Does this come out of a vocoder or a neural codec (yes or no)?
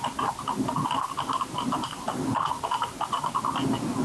no